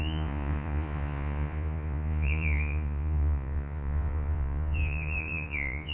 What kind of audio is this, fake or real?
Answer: fake